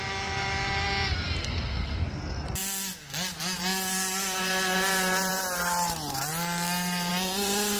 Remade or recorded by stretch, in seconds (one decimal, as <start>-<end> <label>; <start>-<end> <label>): 0.0-1.4 recorded; 1.4-2.2 remade; 2.2-7.8 recorded